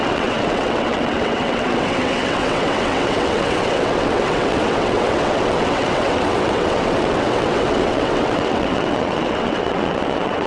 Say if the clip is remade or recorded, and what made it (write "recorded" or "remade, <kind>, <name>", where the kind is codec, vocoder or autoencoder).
remade, vocoder, WaveNeXt